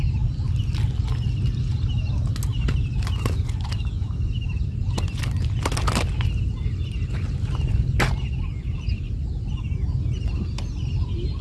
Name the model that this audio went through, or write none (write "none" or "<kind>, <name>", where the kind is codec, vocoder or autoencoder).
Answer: none